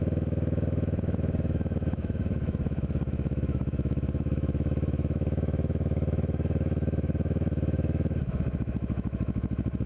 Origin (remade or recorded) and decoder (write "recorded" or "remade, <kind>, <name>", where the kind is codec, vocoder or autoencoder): remade, autoencoder, DAC-VAE